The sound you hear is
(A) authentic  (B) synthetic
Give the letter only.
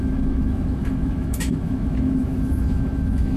B